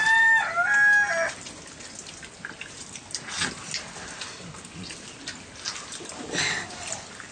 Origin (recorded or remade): recorded